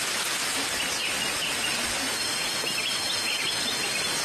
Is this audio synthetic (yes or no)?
no